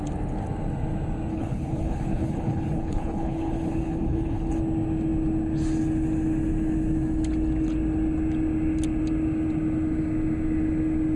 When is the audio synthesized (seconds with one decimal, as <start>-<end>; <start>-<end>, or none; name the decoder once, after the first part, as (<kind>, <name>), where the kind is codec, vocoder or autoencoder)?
1.3-4.6 (codec, HILCodec)